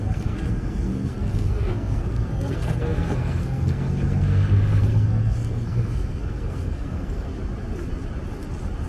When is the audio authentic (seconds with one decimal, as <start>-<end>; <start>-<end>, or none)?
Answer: 7.3-8.9